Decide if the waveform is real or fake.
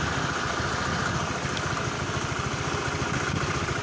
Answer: real